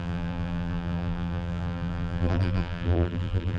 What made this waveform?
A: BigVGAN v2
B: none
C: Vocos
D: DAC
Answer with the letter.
A